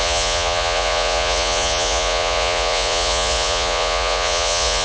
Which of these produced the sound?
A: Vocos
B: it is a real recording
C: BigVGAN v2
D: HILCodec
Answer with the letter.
A